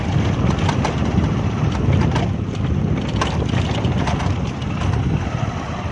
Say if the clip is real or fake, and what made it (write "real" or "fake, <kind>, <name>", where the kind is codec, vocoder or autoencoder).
real